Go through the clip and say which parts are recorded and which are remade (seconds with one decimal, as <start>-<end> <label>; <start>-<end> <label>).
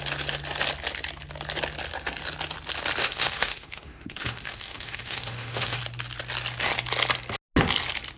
0.0-3.0 recorded; 3.0-5.8 remade; 5.8-8.2 recorded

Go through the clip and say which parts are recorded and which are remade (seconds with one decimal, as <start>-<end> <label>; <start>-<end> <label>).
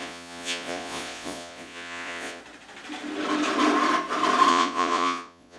0.0-2.4 remade; 2.4-4.5 recorded; 4.5-5.6 remade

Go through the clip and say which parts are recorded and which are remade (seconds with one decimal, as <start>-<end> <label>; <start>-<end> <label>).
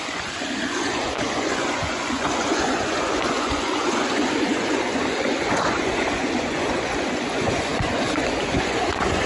0.0-9.3 remade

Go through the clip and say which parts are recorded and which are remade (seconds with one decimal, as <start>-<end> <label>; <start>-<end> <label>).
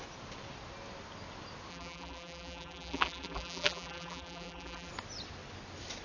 0.0-1.7 recorded; 1.7-4.9 remade; 4.9-6.0 recorded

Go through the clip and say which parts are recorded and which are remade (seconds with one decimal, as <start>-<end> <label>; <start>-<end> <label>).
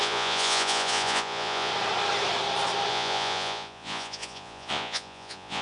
0.0-1.7 remade; 1.7-2.9 recorded; 2.9-5.6 remade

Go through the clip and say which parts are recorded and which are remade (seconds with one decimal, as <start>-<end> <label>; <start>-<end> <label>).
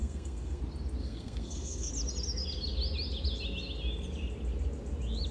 0.0-0.6 remade; 0.6-1.0 recorded; 1.0-1.9 remade; 1.9-5.3 recorded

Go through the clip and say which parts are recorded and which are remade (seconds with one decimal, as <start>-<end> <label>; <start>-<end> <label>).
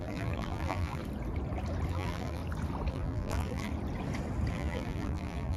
0.0-1.0 remade; 1.0-1.9 recorded; 1.9-2.4 remade; 2.4-2.9 recorded; 2.9-3.7 remade; 3.7-4.5 recorded; 4.5-5.6 remade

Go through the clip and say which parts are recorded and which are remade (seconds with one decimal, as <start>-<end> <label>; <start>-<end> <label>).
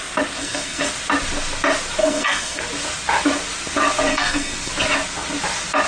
0.0-0.4 recorded; 0.4-0.9 remade; 0.9-2.0 recorded; 2.0-2.6 remade; 2.6-4.1 recorded; 4.1-4.7 remade; 4.7-5.9 recorded